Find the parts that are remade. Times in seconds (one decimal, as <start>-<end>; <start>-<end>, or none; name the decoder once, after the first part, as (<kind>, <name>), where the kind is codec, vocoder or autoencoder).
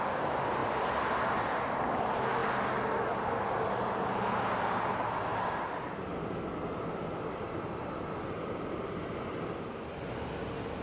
none